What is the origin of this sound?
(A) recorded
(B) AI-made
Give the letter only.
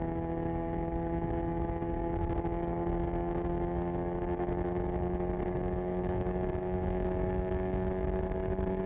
B